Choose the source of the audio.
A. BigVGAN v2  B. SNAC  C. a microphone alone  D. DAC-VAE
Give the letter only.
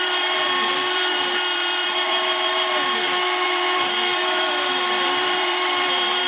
A